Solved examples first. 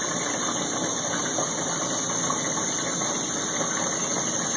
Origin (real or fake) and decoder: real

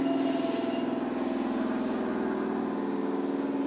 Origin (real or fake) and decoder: real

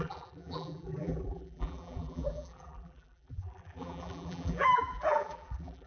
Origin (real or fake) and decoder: fake, vocoder, BigVGAN v2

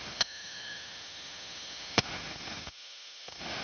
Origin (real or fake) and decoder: fake, autoencoder, DAC-VAE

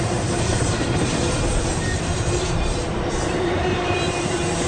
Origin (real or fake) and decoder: fake, vocoder, BigVGAN v2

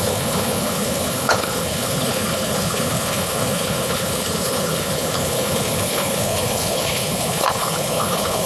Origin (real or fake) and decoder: fake, codec, HILCodec